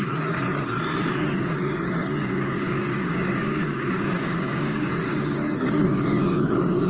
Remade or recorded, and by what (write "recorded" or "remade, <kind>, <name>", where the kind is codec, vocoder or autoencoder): remade, codec, DAC